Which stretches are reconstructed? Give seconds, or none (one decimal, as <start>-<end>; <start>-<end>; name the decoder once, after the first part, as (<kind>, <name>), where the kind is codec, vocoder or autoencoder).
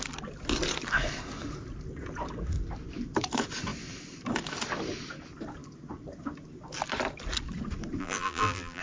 8.0-8.8 (vocoder, BigVGAN v2)